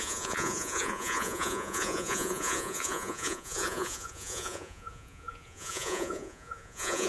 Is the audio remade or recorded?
remade